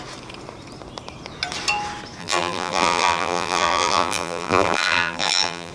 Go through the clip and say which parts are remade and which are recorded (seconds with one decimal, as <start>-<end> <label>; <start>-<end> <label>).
0.0-2.2 recorded; 2.2-5.7 remade